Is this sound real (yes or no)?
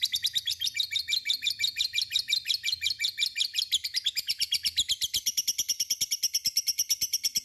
yes